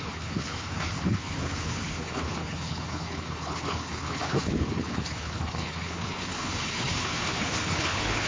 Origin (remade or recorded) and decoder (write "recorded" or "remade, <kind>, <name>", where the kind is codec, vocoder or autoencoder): remade, codec, HILCodec